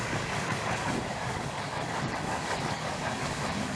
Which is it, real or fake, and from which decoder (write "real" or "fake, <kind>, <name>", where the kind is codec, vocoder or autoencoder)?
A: fake, codec, DAC